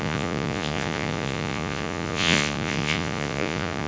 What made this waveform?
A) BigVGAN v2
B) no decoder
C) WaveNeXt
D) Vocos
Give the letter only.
D